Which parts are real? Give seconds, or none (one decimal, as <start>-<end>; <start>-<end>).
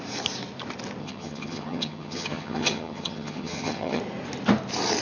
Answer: 0.0-1.0; 4.0-5.0